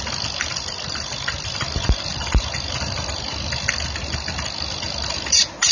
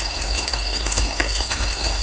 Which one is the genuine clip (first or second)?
first